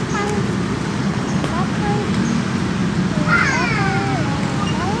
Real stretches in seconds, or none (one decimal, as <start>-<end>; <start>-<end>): 0.0-1.0; 1.5-5.0